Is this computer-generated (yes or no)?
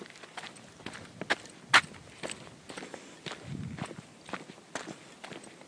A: no